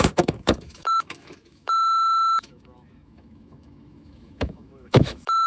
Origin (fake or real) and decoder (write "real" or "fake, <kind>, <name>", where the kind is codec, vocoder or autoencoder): fake, autoencoder, DAC-VAE